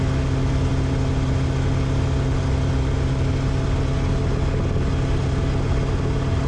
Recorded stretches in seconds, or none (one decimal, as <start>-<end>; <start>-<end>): 0.0-6.5